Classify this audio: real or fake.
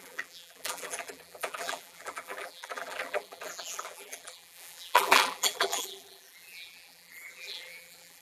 fake